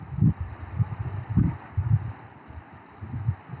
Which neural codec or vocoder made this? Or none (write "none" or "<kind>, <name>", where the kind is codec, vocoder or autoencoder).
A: none